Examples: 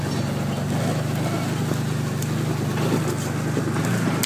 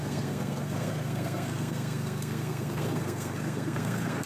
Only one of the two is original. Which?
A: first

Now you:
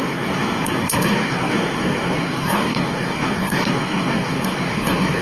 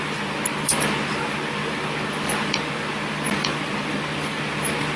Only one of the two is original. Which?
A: second